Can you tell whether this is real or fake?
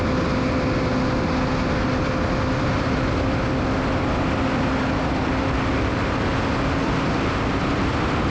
real